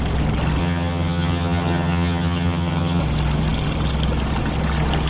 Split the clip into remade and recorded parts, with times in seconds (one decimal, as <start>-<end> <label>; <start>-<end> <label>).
0.0-0.6 recorded; 0.6-3.0 remade; 3.0-5.1 recorded